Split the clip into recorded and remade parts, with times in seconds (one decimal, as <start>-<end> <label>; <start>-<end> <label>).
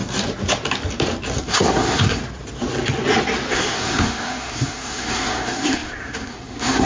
0.0-1.4 recorded; 1.4-2.2 remade; 2.2-3.5 recorded; 3.5-6.9 remade